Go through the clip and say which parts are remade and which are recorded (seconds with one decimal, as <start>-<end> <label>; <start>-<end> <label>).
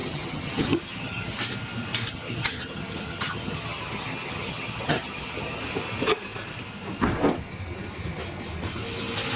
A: 0.0-1.4 remade; 1.4-2.1 recorded; 2.1-5.6 remade; 5.6-9.4 recorded